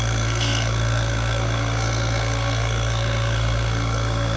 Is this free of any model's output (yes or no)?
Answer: no